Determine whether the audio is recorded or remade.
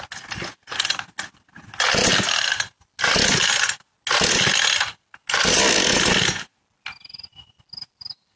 recorded